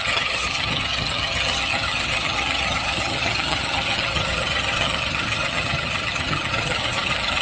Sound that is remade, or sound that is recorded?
remade